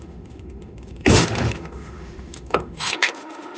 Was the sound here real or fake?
fake